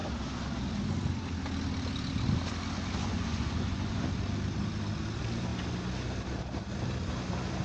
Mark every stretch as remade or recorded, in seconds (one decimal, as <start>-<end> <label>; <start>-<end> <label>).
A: 0.0-3.0 recorded; 3.0-4.1 remade; 4.1-7.6 recorded